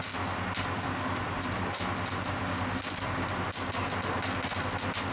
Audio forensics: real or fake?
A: real